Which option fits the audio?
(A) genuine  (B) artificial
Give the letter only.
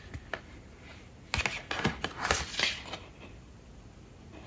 A